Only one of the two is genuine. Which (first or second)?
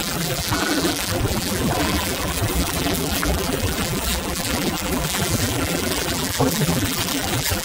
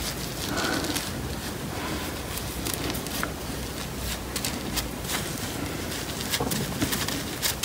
second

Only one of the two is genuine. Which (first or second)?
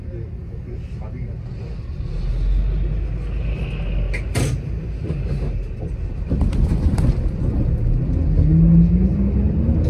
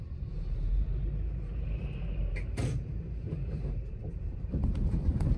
first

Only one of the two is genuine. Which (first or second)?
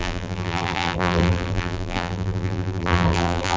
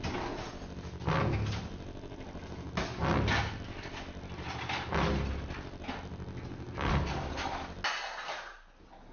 second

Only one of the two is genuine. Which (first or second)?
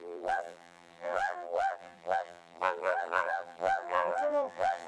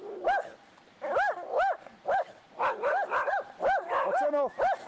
second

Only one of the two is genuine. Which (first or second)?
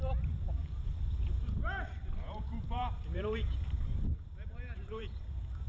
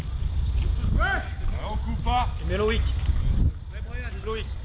second